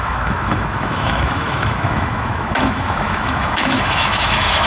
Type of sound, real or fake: fake